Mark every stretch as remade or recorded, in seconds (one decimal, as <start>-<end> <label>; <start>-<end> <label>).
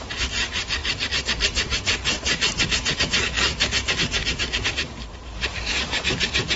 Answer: 0.0-4.2 remade; 4.2-5.2 recorded; 5.2-6.6 remade